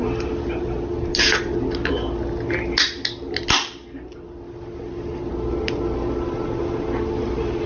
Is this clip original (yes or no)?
yes